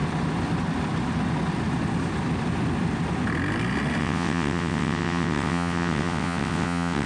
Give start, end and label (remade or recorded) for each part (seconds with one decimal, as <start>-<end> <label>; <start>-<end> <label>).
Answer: 0.0-4.0 recorded; 4.0-7.1 remade